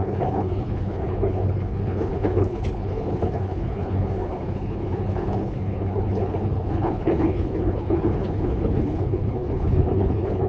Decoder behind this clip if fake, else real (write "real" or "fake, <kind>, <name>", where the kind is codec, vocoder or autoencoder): fake, codec, HILCodec